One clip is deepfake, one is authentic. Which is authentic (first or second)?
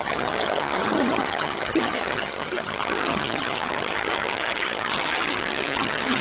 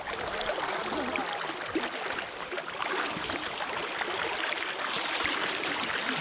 second